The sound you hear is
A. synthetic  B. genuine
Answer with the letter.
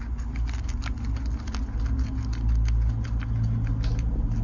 B